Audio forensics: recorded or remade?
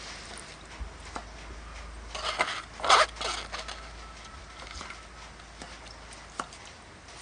recorded